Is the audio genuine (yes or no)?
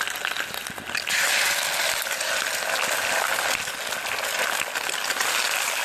yes